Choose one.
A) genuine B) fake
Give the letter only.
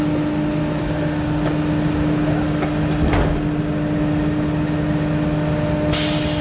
A